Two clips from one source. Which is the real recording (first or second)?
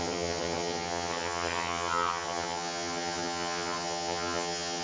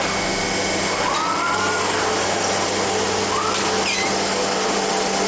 second